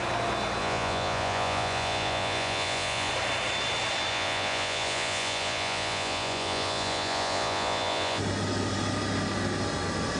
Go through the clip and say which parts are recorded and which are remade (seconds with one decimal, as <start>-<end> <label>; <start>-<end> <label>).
0.0-0.6 recorded; 0.6-3.1 remade; 3.1-4.1 recorded; 4.1-8.2 remade; 8.2-10.2 recorded